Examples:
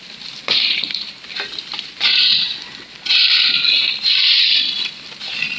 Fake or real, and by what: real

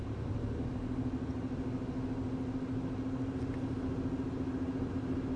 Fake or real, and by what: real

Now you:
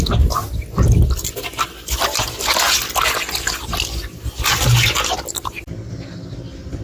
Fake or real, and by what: real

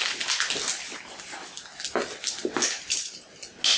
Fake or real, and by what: real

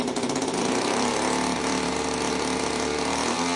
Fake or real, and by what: fake, vocoder, BigVGAN v2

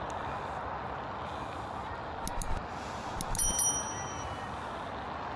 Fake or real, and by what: real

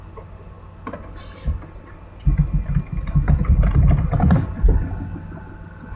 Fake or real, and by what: real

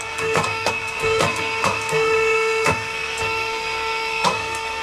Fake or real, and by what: fake, codec, SNAC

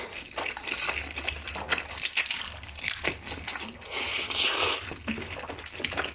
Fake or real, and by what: real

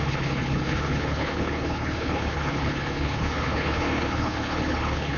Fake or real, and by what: fake, codec, HILCodec